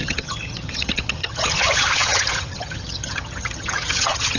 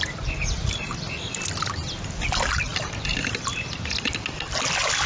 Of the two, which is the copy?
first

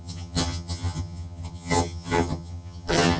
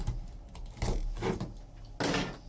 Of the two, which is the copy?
first